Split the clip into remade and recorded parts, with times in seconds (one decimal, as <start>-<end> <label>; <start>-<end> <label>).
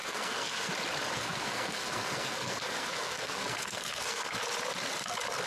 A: 0.0-0.7 remade; 0.7-1.1 recorded; 1.1-4.4 remade; 4.4-5.5 recorded